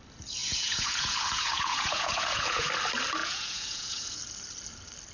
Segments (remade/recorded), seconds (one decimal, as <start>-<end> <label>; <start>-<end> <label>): 0.0-0.4 recorded; 0.4-2.7 remade; 2.7-3.2 recorded; 3.2-4.2 remade; 4.2-5.1 recorded